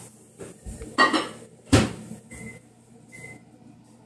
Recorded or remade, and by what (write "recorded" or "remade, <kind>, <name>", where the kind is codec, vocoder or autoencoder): recorded